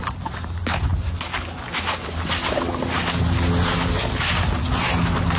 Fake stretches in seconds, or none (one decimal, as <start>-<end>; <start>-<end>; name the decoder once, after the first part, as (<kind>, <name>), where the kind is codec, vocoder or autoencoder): none